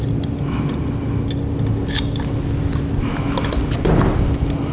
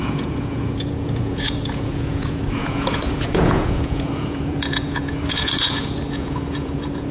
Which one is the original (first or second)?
first